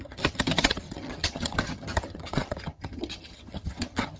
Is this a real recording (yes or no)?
no